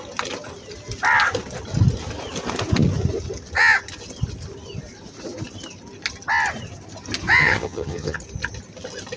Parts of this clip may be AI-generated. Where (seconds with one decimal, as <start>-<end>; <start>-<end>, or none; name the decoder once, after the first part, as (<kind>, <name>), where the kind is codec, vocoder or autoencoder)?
7.4-8.2 (vocoder, HiFi-GAN)

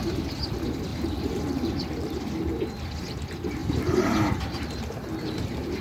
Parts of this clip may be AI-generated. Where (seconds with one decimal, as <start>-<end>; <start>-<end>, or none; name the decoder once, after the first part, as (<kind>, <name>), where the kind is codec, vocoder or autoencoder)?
0.9-2.2 (vocoder, BigVGAN v2); 3.6-4.8

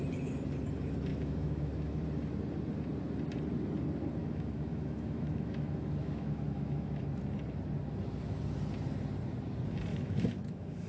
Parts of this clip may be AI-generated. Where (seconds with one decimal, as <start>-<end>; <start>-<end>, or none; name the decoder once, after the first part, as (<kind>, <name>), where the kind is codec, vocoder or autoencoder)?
1.1-2.0 (autoencoder, DAC-VAE); 4.2-7.0; 9.9-10.9